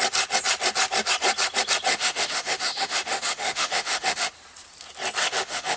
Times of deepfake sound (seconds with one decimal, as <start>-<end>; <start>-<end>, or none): 1.9-4.3; 5.2-5.8